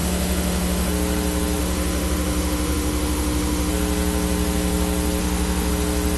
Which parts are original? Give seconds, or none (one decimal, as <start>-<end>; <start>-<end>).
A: 0.9-1.6; 3.7-5.2; 5.7-6.2